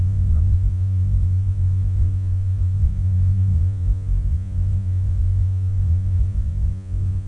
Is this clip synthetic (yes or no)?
yes